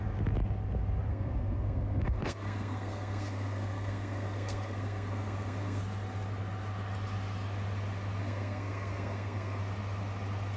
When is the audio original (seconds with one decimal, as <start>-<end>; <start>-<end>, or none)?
0.0-1.1; 5.8-8.2; 9.6-10.6